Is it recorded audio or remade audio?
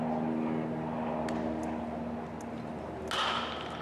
recorded